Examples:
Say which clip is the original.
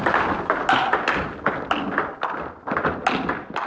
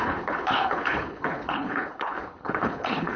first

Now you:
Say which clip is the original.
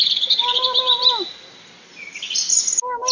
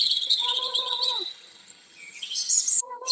first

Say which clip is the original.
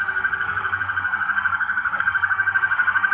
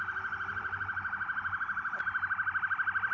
second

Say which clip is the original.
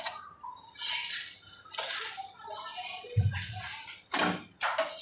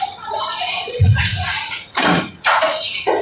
first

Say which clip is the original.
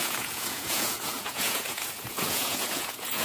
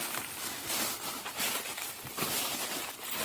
second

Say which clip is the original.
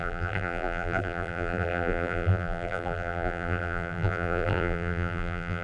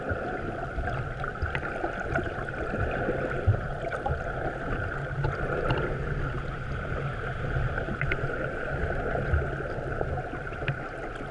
second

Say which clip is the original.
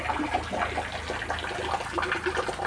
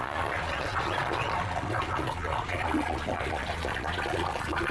first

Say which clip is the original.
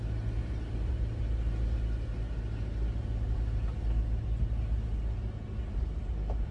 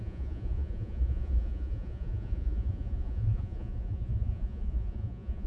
first